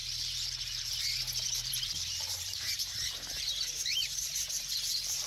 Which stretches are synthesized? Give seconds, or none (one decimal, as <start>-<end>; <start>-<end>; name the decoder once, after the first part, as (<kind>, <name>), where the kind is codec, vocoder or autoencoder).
0.0-5.3 (vocoder, BigVGAN v2)